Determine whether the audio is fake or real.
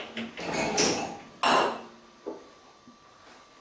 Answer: real